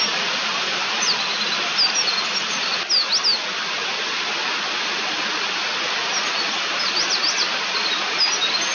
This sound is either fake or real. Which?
real